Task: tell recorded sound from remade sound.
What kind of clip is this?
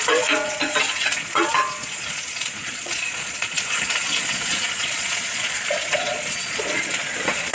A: remade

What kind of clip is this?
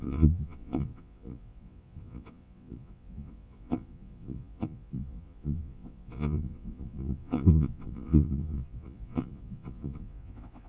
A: remade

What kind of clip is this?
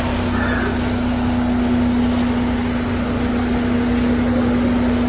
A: recorded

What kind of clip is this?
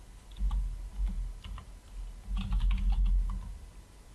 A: recorded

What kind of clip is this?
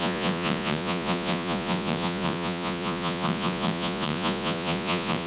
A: remade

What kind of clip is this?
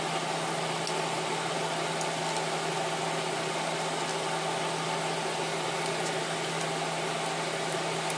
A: recorded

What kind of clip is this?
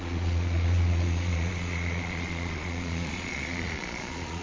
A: remade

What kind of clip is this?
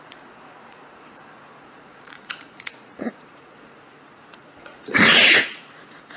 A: remade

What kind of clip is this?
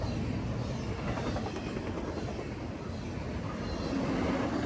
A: recorded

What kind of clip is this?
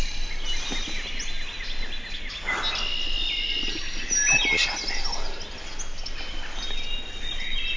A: recorded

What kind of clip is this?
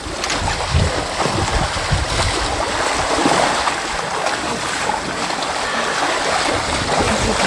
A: recorded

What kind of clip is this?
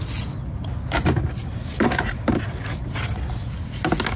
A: recorded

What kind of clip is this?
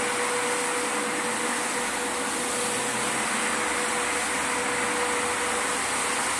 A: recorded